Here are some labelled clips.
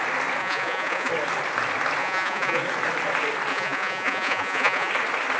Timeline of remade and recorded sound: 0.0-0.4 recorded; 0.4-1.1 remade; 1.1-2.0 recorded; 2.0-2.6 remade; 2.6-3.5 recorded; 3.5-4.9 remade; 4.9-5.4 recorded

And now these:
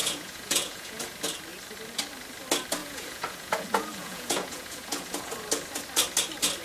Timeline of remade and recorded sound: 0.0-1.0 remade; 1.0-2.8 recorded; 2.8-5.3 remade; 5.3-6.6 recorded

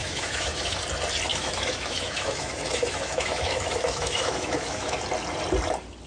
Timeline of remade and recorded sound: 0.0-0.8 remade; 0.8-1.3 recorded; 1.3-5.0 remade; 5.0-6.1 recorded